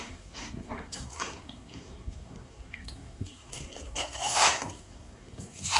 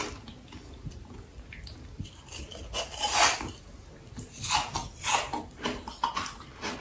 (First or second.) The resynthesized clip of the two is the first